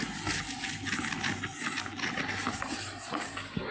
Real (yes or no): yes